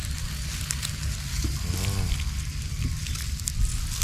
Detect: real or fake real